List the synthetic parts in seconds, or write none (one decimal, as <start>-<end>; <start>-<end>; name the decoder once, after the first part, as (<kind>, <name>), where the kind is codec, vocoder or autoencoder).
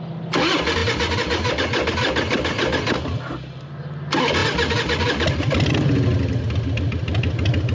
none